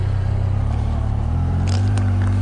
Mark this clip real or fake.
real